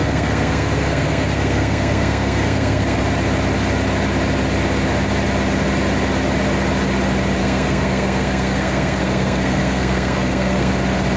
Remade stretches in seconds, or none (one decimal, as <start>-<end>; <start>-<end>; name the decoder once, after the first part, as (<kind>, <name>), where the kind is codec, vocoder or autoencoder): 0.0-3.0 (codec, SNAC); 7.4-10.7